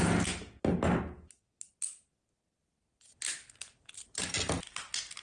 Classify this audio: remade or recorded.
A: recorded